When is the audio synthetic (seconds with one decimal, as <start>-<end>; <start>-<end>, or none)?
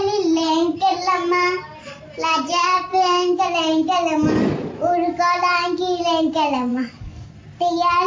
2.9-3.4; 6.7-7.3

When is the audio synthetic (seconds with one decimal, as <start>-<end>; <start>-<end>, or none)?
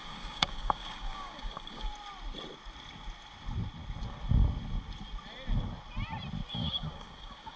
0.0-1.9; 6.5-7.6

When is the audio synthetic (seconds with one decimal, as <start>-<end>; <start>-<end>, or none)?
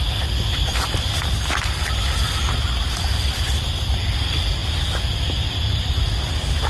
none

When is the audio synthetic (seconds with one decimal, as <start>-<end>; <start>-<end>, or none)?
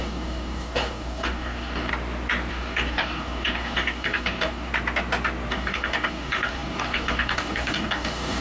0.0-1.9; 2.5-4.7; 5.5-8.4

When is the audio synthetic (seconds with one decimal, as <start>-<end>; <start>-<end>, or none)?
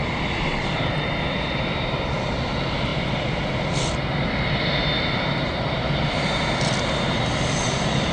none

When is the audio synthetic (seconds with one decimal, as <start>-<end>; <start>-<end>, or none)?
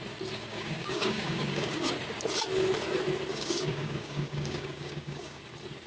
0.5-1.9; 3.3-5.4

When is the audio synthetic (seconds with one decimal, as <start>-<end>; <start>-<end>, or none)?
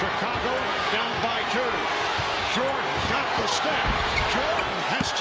0.7-1.4; 2.9-4.2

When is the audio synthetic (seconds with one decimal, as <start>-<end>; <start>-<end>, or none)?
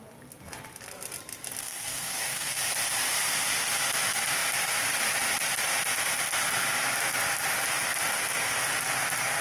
1.6-2.6